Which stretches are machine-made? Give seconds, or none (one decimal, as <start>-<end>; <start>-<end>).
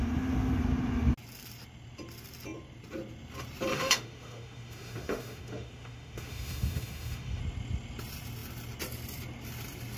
3.7-7.4